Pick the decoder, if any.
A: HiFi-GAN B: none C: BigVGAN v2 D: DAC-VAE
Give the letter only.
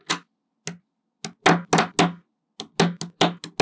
B